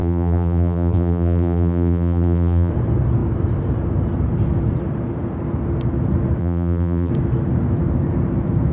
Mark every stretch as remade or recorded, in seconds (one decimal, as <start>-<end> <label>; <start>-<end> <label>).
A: 0.0-2.7 remade; 2.7-6.4 recorded; 6.4-7.1 remade; 7.1-8.7 recorded